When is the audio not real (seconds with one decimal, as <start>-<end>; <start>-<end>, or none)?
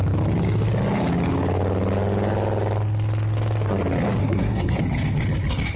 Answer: 4.2-4.8